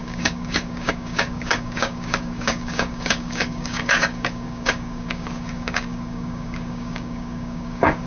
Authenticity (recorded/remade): remade